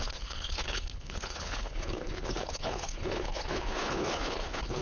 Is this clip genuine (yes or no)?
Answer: no